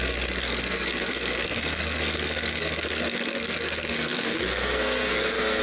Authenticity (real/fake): fake